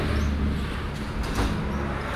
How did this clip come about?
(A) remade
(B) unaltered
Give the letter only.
B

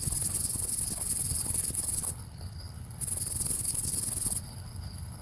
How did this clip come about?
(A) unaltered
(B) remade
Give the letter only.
B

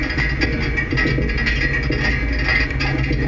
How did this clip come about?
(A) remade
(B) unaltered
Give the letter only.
B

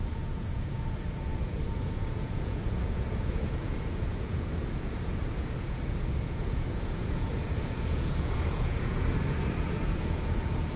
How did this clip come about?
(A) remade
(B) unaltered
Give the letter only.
A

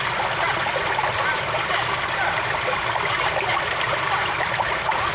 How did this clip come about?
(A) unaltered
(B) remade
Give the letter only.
A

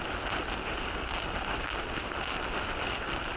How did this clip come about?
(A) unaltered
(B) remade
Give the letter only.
A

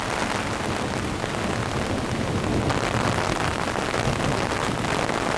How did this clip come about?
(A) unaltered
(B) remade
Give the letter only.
A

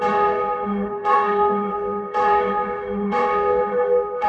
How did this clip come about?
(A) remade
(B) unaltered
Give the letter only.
A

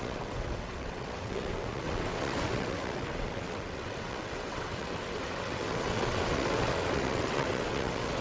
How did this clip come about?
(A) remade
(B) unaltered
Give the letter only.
A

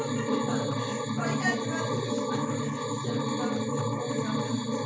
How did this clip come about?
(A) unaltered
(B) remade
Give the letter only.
A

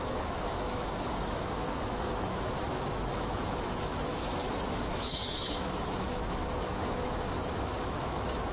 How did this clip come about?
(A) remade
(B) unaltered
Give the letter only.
A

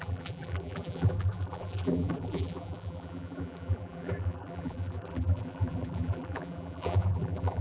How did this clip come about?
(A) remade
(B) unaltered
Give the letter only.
A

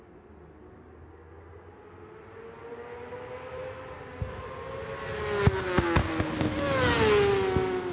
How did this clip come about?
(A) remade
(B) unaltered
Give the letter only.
B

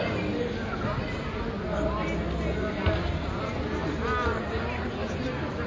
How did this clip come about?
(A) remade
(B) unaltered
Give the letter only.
B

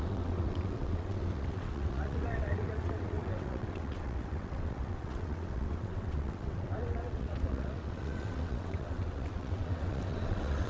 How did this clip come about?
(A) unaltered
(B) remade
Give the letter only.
B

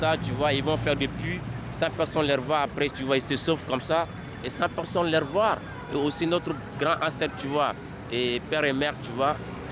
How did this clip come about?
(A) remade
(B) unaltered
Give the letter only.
B